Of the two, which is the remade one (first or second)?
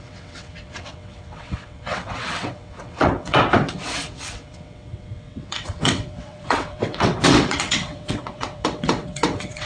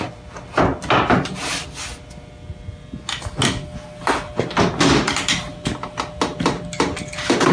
first